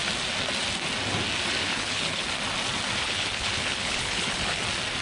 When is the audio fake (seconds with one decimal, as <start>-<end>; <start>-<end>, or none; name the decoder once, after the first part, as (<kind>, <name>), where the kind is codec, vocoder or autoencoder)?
1.6-2.3 (codec, HILCodec); 3.0-4.6